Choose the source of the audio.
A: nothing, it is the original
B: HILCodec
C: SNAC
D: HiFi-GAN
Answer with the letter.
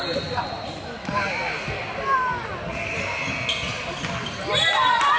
A